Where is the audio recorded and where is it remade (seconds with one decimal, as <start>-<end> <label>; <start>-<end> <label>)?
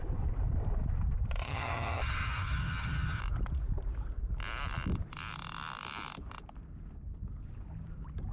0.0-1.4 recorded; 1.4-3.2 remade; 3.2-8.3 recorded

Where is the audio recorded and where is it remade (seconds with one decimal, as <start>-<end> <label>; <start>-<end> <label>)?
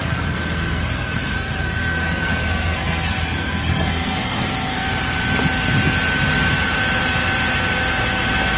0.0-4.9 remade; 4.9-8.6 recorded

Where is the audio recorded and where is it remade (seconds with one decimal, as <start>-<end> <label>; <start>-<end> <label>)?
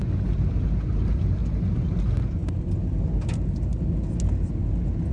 0.0-5.1 recorded